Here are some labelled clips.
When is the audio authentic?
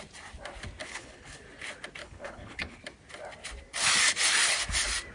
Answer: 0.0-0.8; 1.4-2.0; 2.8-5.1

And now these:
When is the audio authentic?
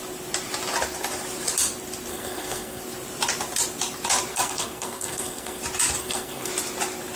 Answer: 0.0-2.1; 2.8-4.3; 5.6-6.0; 6.5-7.2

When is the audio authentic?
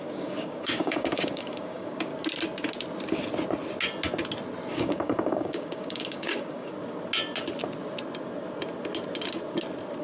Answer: 2.1-4.7; 6.7-10.0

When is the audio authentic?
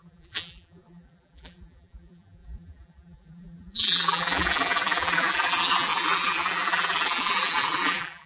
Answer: none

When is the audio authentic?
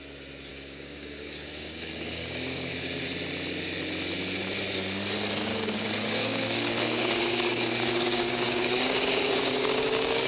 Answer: 0.0-0.5; 2.7-5.5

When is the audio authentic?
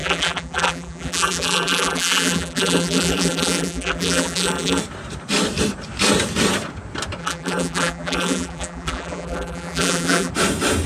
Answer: 4.8-7.2; 10.3-10.9